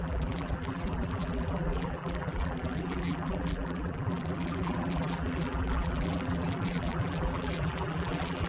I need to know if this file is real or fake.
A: fake